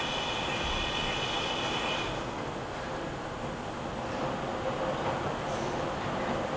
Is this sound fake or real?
real